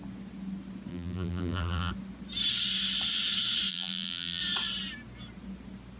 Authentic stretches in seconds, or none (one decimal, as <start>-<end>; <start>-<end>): 0.0-0.9; 1.9-3.7; 4.4-6.0